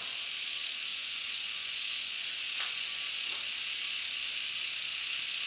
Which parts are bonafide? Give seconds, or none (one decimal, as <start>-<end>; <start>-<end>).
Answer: 0.0-0.9; 3.3-5.5